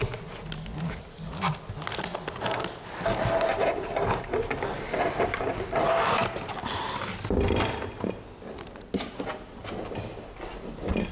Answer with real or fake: real